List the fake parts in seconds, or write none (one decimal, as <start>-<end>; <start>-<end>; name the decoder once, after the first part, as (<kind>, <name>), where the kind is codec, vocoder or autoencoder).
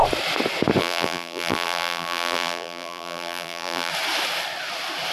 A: 0.8-3.9 (vocoder, BigVGAN v2)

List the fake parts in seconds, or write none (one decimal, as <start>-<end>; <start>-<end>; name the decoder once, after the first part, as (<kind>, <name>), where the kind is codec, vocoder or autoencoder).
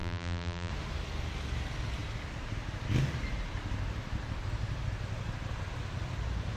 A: 0.0-0.7 (vocoder, BigVGAN v2)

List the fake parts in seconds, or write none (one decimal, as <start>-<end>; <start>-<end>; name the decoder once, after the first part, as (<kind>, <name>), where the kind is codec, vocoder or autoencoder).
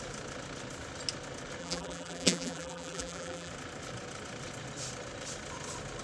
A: 1.6-3.5 (vocoder, BigVGAN v2)